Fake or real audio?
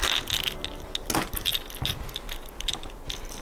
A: real